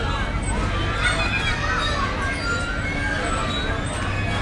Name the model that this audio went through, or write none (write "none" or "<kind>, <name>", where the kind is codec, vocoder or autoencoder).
none